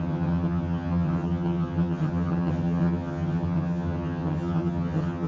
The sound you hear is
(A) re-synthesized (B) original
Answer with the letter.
A